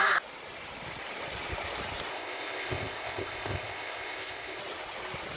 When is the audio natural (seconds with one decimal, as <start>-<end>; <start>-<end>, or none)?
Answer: 0.0-2.1; 4.6-5.4